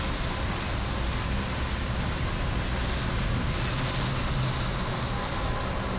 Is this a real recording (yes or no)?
yes